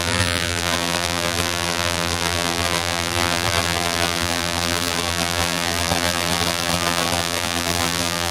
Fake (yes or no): yes